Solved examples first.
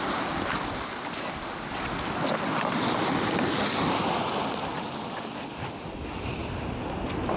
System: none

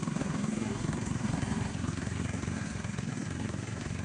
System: codec, SNAC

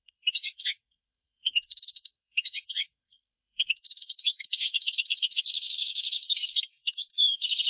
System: codec, SNAC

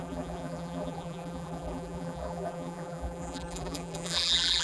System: vocoder, BigVGAN v2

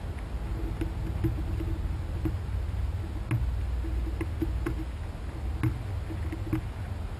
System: none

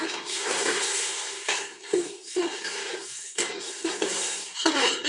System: codec, SNAC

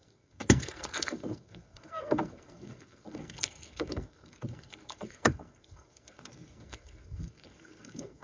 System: codec, SNAC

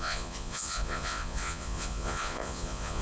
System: vocoder, Vocos